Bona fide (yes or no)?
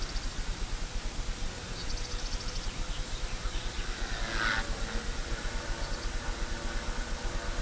yes